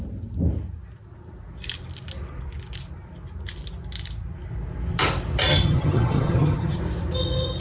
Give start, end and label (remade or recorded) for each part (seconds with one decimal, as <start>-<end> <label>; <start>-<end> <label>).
0.0-5.5 recorded; 5.5-6.8 remade; 6.8-7.6 recorded